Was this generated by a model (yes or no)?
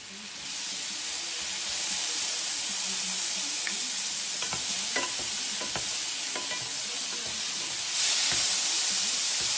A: no